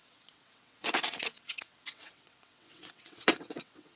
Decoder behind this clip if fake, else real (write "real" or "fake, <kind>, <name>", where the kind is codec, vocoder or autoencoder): fake, vocoder, WaveNeXt